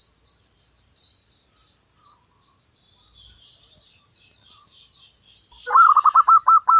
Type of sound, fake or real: fake